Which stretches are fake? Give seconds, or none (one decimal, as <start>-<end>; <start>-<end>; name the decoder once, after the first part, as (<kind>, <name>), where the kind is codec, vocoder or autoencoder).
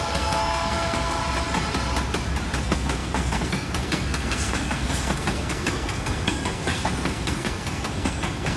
0.0-1.2 (codec, SNAC); 2.6-8.6